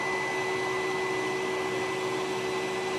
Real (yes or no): yes